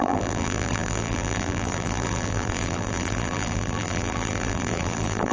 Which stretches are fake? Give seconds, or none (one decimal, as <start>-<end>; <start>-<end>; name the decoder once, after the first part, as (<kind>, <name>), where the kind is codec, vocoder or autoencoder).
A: 0.0-5.3 (vocoder, BigVGAN v2)

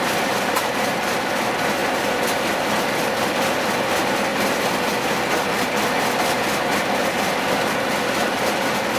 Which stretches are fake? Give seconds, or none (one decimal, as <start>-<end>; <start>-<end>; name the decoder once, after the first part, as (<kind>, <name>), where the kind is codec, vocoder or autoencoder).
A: none

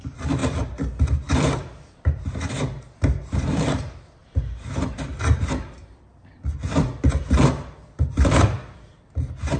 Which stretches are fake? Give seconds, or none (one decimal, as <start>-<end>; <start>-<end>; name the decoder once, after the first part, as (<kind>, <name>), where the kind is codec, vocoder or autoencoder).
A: none

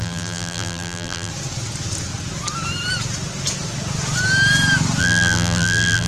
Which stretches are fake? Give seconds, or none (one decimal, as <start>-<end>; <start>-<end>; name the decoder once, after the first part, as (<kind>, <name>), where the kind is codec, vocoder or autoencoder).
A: 0.0-1.3 (vocoder, BigVGAN v2); 5.0-6.1